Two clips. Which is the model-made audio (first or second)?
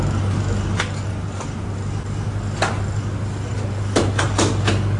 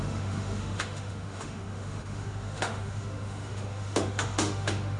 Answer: second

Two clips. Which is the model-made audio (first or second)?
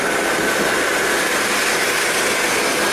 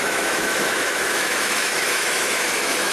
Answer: second